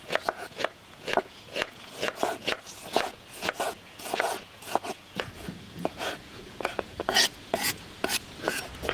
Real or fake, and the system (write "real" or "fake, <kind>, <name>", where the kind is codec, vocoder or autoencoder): fake, vocoder, Vocos